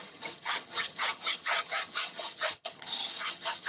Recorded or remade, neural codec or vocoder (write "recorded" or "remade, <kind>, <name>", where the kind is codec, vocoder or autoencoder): remade, vocoder, HiFi-GAN